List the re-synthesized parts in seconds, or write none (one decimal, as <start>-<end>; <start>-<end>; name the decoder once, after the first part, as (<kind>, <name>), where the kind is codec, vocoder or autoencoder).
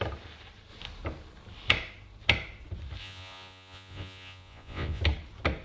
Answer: 3.0-5.0 (vocoder, Vocos)